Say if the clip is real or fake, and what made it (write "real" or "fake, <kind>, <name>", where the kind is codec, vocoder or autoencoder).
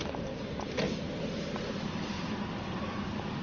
real